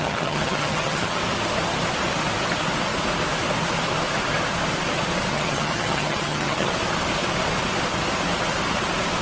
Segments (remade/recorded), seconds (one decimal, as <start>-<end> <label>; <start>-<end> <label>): 0.0-1.2 remade; 1.2-5.3 recorded; 5.3-6.7 remade; 6.7-9.2 recorded